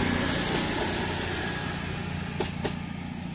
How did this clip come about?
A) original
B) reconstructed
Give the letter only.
A